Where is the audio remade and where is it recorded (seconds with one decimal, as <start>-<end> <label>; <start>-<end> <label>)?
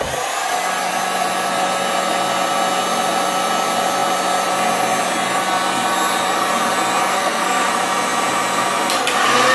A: 0.0-7.1 recorded; 7.1-7.7 remade; 7.7-9.5 recorded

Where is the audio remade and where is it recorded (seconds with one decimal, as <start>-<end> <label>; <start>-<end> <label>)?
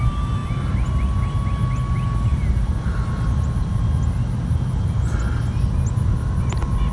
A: 0.0-6.9 recorded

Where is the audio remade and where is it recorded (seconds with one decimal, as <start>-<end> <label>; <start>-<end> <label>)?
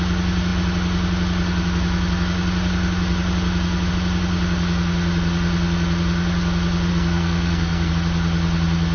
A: 0.0-6.9 recorded; 6.9-7.9 remade; 7.9-8.9 recorded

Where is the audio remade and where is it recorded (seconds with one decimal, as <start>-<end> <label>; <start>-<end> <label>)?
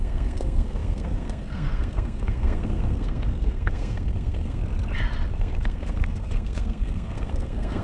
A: 0.0-4.6 remade; 4.6-5.3 recorded; 5.3-7.8 remade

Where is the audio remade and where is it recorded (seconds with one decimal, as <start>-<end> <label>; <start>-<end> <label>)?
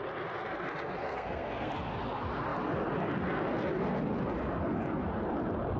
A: 0.0-1.0 recorded; 1.0-1.7 remade; 1.7-5.8 recorded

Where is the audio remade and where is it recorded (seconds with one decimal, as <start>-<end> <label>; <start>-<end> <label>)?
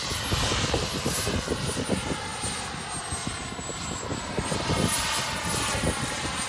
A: 0.0-6.5 recorded